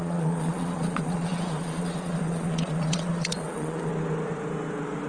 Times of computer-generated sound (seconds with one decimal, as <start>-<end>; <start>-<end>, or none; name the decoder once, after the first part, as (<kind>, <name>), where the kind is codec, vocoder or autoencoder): 0.0-3.9 (vocoder, Vocos)